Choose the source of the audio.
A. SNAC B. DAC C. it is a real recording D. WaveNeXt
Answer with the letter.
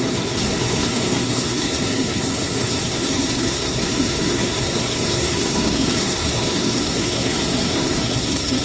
A